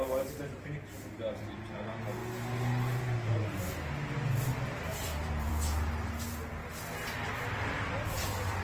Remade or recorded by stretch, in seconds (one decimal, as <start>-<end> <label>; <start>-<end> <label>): 0.0-4.0 recorded; 4.0-5.5 remade; 5.5-8.6 recorded

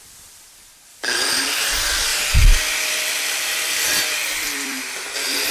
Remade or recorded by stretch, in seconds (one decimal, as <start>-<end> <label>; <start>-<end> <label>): 0.0-0.9 recorded; 0.9-1.6 remade; 1.6-2.1 recorded; 2.1-5.5 remade

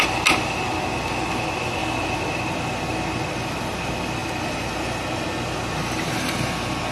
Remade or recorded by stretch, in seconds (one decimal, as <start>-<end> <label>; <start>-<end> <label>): 0.0-4.2 recorded; 4.2-4.7 remade; 4.7-6.9 recorded

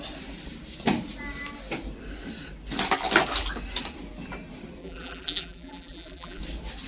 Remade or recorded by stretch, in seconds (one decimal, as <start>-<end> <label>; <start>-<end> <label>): 0.0-4.8 recorded; 4.8-6.4 remade; 6.4-6.9 recorded